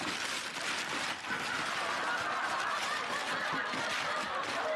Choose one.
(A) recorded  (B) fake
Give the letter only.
A